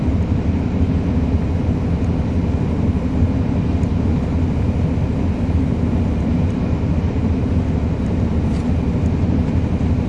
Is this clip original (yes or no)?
yes